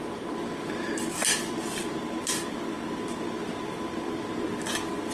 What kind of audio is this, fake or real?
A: real